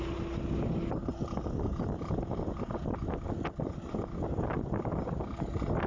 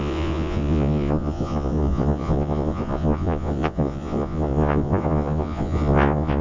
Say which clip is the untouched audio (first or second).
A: first